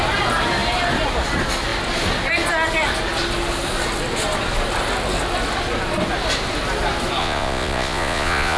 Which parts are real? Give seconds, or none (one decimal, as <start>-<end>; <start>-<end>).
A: 0.0-7.2